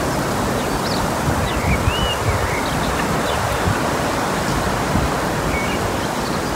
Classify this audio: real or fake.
real